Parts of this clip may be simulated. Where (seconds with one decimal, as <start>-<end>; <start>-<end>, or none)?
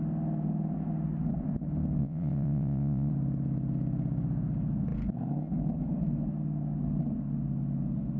2.0-3.1